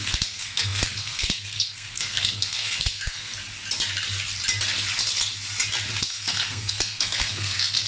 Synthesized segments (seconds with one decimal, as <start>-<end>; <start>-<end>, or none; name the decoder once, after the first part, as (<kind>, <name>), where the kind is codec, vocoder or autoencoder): 0.0-3.3 (codec, SNAC); 6.0-7.9

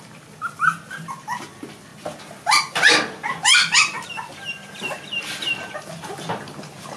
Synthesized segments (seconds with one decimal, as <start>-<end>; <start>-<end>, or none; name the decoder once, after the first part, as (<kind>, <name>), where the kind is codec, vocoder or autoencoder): none

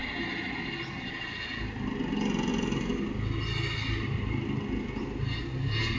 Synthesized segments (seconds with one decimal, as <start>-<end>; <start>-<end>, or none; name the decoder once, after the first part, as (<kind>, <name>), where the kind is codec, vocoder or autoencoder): none

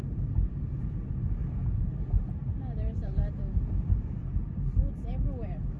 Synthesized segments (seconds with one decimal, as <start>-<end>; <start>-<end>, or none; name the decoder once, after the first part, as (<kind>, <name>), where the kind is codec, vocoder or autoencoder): 0.0-0.8 (vocoder, BigVGAN v2); 1.4-4.9

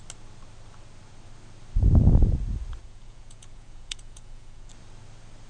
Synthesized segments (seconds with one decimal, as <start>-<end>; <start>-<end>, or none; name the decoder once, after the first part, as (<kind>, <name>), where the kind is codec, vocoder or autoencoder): 2.8-4.7 (vocoder, Vocos)

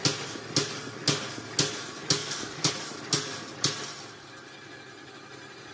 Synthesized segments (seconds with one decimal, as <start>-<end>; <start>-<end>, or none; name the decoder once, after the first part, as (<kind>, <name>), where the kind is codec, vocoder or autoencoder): 2.2-2.7 (codec, DAC)

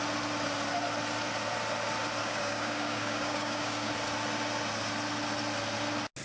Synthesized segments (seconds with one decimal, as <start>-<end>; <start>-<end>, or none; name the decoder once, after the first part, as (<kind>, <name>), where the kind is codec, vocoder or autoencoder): 2.2-3.9 (codec, DAC)